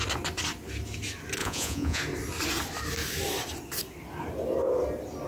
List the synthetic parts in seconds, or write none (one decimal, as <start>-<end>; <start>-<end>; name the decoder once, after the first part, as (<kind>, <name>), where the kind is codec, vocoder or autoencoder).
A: 1.4-2.0 (vocoder, Vocos)